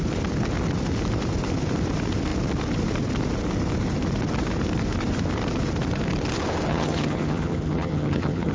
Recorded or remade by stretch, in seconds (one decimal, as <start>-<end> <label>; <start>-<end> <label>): 0.0-6.7 recorded; 6.7-8.5 remade